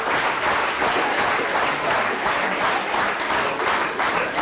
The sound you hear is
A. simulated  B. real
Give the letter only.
B